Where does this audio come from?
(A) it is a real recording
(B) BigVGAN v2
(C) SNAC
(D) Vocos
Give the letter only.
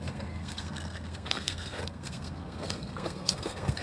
C